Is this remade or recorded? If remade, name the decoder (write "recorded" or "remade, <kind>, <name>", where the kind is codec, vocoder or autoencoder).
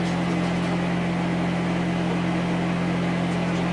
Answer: recorded